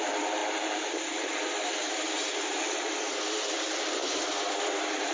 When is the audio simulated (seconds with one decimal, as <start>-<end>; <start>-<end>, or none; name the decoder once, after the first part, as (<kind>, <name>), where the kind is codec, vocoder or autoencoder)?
0.0-5.1 (vocoder, BigVGAN v2)